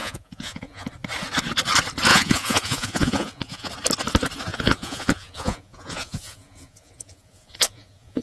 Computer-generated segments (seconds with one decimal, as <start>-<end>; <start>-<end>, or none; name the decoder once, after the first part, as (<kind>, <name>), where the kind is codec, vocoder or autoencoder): 0.0-0.9 (vocoder, Vocos); 2.1-3.7; 4.5-8.2